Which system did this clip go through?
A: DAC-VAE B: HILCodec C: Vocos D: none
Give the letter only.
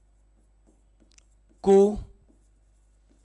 D